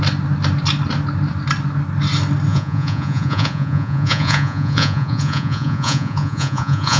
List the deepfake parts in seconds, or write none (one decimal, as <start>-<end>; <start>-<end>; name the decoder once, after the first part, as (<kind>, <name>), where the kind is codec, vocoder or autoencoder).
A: 2.5-7.0 (vocoder, Vocos)